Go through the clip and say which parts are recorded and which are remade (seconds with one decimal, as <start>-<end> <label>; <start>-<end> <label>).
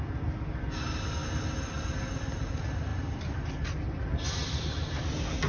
0.0-2.9 recorded; 2.9-3.4 remade; 3.4-5.5 recorded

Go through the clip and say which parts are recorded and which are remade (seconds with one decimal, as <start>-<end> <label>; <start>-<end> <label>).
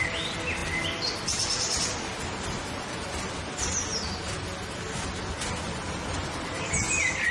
0.0-0.6 recorded; 0.6-4.0 remade; 4.0-6.2 recorded; 6.2-6.8 remade; 6.8-7.3 recorded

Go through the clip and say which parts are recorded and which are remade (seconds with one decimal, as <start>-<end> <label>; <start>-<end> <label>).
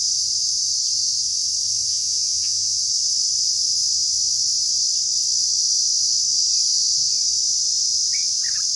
0.0-1.9 recorded; 1.9-2.8 remade; 2.8-8.8 recorded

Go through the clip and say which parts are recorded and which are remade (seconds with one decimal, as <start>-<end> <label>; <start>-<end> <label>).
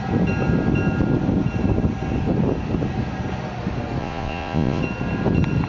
0.0-4.0 recorded; 4.0-4.8 remade; 4.8-5.7 recorded